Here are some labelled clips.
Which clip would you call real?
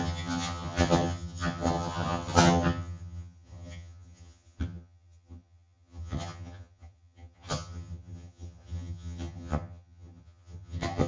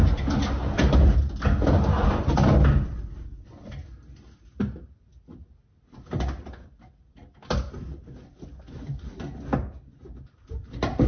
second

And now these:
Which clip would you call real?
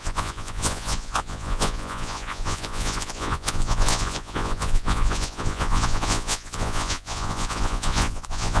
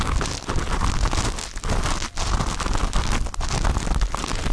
second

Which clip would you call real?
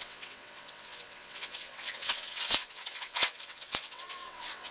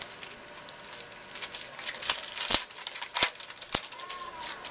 second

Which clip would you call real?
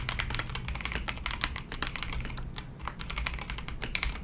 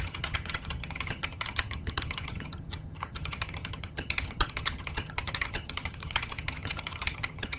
first